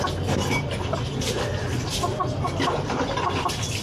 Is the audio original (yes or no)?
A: yes